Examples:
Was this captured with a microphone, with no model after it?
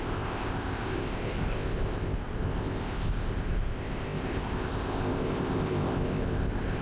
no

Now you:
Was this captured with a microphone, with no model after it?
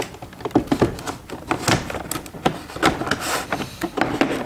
yes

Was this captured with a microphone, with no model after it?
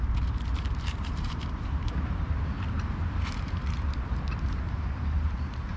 no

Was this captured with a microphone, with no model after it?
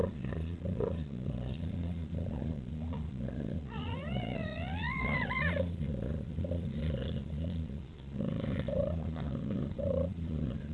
no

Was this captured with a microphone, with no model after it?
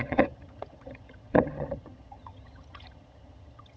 no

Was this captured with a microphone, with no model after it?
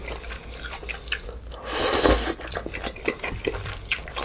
yes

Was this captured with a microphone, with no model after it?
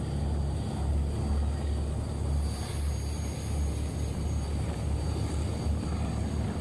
yes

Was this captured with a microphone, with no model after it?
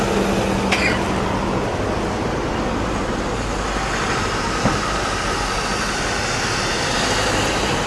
yes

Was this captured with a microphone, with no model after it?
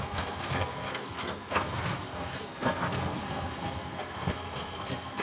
no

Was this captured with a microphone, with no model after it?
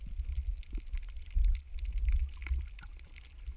yes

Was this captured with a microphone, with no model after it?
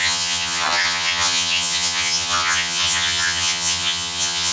no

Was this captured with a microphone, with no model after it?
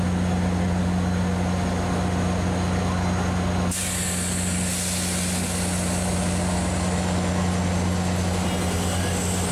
yes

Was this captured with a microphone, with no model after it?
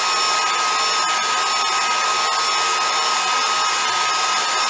yes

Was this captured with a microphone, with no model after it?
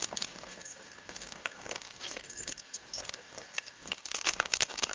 no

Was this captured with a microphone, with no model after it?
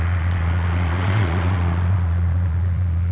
no